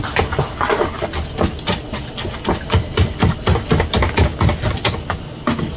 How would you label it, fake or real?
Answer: real